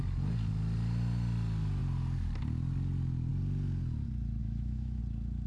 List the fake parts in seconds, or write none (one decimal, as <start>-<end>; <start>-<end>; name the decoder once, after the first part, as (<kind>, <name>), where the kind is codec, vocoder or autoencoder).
4.4-5.0 (autoencoder, DAC-VAE)